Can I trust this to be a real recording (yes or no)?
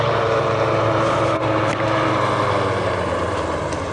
no